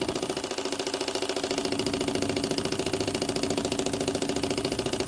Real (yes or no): yes